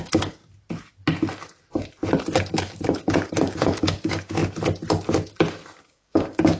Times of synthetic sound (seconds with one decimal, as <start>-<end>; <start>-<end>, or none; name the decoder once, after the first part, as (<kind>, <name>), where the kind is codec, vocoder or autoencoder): 0.0-0.4 (codec, DAC); 2.5-4.4; 5.8-6.6